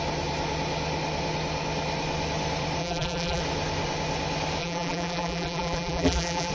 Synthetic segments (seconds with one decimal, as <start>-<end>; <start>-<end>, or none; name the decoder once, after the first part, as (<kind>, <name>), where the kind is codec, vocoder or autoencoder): 2.8-3.4 (vocoder, BigVGAN v2); 4.6-6.5